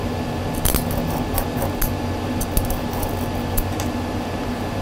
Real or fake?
real